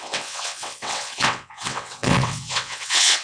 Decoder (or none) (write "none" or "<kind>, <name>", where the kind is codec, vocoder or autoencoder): vocoder, WaveNeXt